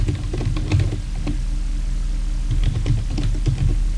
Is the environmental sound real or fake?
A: real